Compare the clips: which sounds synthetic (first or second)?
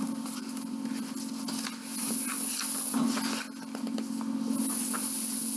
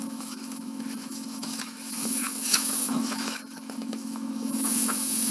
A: second